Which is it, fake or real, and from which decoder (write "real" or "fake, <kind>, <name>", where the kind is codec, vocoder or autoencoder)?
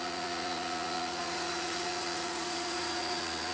fake, vocoder, Vocos